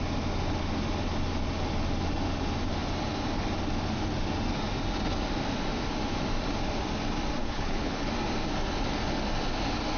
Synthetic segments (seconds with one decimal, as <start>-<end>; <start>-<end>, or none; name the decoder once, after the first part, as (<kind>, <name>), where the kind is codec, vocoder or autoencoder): 7.4-8.1 (codec, HILCodec)